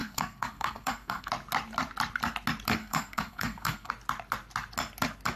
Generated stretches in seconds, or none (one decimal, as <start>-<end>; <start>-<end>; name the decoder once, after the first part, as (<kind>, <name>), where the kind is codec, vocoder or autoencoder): 0.0-1.3 (codec, SNAC); 2.8-3.9

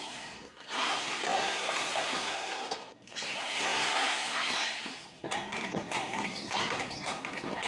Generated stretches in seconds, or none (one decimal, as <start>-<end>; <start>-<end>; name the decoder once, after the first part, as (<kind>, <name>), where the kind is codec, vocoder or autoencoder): 0.0-7.7 (codec, SNAC)

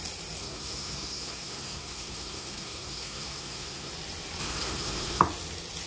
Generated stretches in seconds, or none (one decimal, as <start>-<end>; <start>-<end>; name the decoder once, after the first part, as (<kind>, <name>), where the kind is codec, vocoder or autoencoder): 0.4-3.9 (codec, SNAC); 4.4-5.2

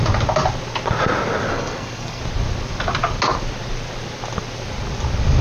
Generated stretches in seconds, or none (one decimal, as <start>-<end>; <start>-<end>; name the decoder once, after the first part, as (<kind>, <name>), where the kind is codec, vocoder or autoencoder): 1.5-2.2 (codec, SNAC)

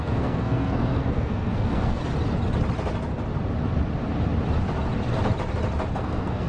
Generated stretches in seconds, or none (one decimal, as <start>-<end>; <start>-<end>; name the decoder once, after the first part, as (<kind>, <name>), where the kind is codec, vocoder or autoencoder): 0.0-2.0 (codec, SNAC); 5.9-6.5